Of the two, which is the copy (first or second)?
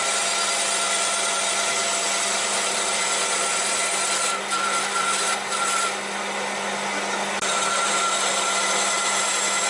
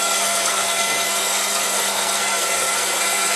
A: second